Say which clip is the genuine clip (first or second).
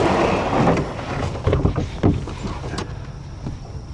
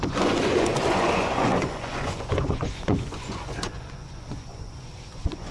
first